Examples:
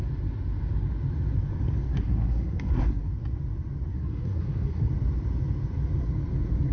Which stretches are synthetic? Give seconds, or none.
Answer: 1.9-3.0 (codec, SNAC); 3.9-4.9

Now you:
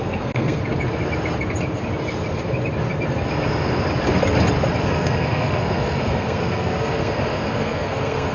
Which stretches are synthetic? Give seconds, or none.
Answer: 0.0-0.6 (codec, SNAC); 4.8-8.3

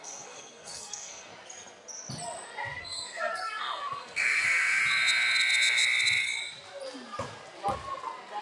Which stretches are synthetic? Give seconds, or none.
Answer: 0.0-1.3 (codec, SNAC); 2.8-4.8

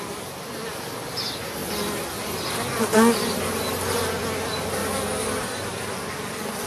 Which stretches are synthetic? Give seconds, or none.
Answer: none

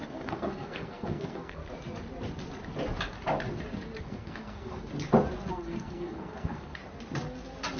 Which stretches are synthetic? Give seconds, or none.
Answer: 0.0-1.6 (codec, SNAC); 4.0-4.9; 5.5-6.8

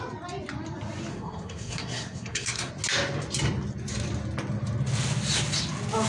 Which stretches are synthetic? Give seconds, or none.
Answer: 1.1-2.7 (codec, SNAC)